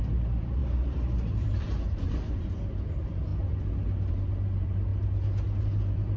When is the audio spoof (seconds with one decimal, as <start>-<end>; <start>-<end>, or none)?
0.0-3.3; 4.1-4.9; 5.6-6.2